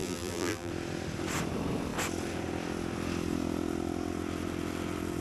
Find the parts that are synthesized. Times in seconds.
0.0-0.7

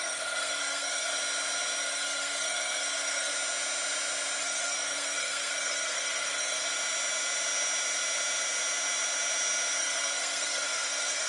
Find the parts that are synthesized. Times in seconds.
0.0-1.1; 1.8-3.3; 4.4-6.6; 9.8-11.3

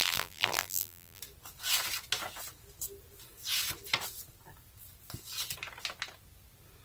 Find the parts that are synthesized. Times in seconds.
0.0-1.2